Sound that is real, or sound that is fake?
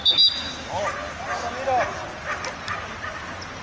real